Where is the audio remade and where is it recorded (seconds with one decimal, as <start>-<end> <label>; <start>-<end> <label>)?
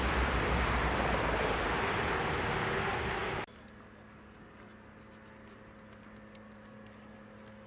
0.0-7.7 recorded